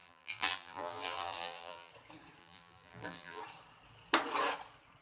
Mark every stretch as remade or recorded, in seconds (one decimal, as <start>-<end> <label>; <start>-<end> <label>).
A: 0.0-1.9 remade; 1.9-2.4 recorded; 2.4-3.4 remade; 3.4-5.0 recorded